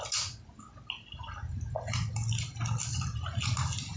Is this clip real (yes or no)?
yes